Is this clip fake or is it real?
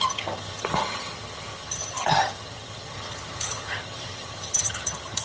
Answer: fake